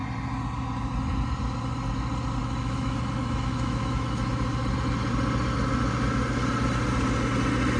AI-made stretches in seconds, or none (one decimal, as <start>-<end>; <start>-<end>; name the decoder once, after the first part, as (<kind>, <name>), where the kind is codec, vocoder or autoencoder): 2.4-4.3 (autoencoder, DAC-VAE)